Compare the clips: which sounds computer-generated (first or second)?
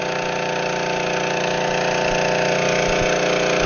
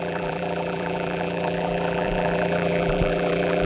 second